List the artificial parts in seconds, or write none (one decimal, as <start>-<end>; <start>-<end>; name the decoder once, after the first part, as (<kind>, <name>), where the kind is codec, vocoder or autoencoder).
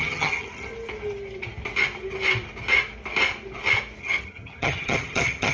0.0-0.7 (vocoder, HiFi-GAN); 4.0-5.5